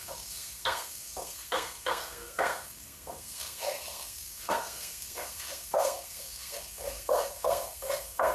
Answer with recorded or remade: remade